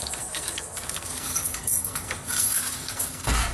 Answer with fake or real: fake